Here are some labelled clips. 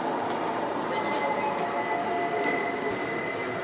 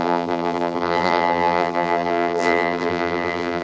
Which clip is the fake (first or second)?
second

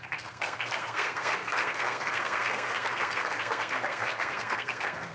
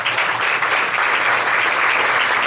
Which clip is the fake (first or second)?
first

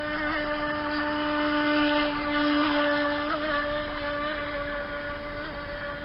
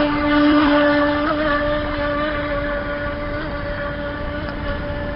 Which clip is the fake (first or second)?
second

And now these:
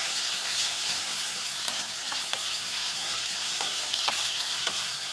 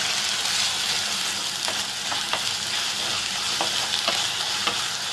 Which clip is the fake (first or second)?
first